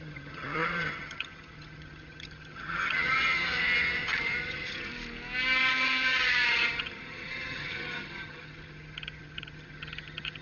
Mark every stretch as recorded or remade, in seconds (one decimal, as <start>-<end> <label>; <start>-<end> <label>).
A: 0.0-4.9 remade; 4.9-5.7 recorded; 5.7-10.4 remade